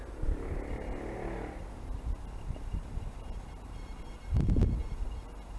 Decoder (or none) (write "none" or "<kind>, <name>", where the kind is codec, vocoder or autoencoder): none